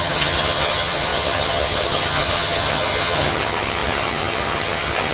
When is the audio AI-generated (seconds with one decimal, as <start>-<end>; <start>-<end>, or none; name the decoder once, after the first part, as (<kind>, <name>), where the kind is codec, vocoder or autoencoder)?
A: 0.0-5.1 (vocoder, HiFi-GAN)